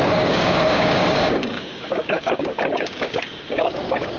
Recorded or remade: remade